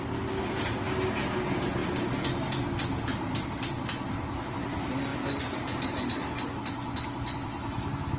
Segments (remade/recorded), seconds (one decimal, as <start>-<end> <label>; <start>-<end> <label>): 0.0-8.2 recorded